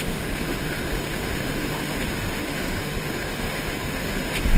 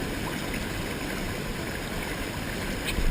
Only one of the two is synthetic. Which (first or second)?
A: first